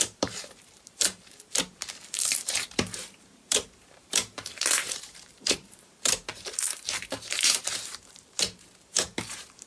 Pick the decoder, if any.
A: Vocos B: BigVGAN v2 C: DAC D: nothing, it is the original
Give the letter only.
B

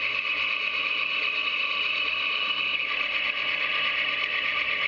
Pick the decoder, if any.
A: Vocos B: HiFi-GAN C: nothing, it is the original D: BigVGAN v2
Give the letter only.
C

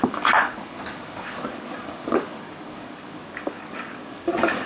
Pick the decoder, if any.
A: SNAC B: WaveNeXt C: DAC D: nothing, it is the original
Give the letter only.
C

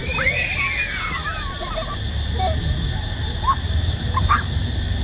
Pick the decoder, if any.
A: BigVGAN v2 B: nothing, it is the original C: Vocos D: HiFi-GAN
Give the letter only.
B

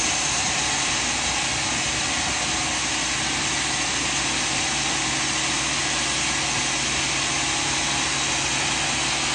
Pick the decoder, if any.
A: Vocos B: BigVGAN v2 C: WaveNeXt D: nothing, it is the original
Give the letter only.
D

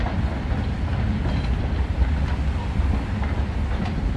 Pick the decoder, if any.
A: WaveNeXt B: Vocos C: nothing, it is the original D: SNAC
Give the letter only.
C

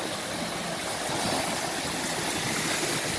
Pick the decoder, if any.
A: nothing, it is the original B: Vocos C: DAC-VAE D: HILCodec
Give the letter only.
A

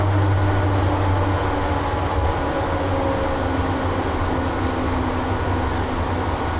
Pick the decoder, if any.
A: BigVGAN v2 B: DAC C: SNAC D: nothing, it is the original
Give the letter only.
D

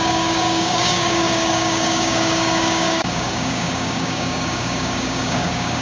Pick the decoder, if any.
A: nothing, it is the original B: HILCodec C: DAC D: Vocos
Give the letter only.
C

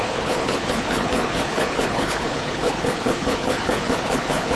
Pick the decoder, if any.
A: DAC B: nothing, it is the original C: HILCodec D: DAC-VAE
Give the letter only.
C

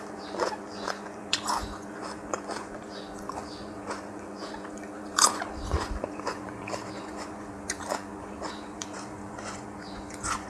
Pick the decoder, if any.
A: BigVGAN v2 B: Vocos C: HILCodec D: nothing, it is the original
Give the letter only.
B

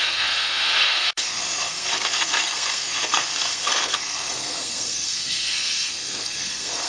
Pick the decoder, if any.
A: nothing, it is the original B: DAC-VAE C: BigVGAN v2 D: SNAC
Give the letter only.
D